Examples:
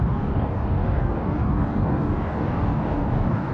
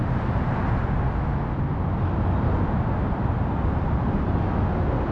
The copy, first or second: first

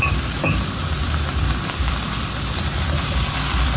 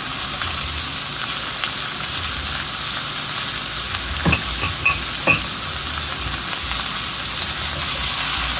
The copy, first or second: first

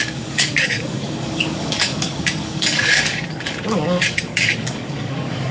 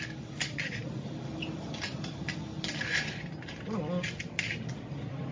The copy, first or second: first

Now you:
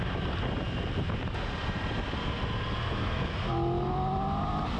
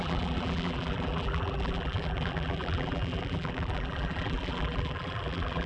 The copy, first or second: second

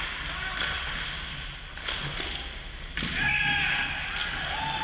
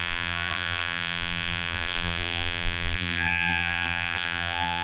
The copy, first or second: second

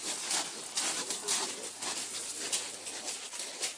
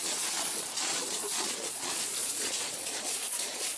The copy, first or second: second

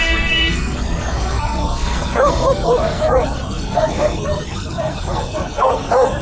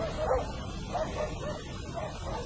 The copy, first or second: first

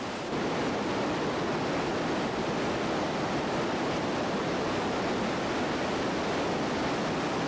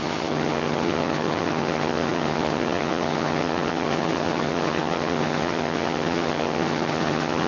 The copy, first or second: second